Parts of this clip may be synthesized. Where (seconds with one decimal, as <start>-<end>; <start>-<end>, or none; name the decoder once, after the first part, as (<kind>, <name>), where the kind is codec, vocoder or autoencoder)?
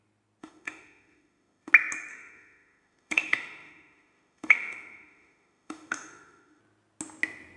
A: 0.4-1.7 (autoencoder, DAC-VAE); 2.1-6.6